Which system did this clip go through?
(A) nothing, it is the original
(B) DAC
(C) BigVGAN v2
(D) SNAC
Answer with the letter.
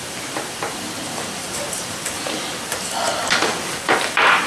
C